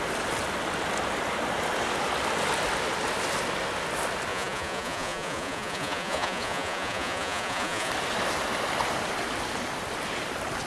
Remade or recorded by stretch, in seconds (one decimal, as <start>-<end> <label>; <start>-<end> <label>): 0.0-4.3 recorded; 4.3-7.9 remade; 7.9-10.7 recorded